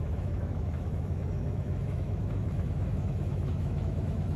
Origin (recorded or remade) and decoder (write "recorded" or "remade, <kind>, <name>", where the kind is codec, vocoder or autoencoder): remade, autoencoder, DAC-VAE